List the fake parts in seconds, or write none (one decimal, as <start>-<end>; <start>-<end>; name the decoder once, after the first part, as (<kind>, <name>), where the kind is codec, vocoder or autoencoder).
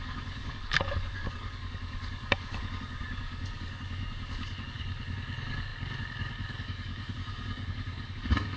0.0-8.6 (codec, DAC)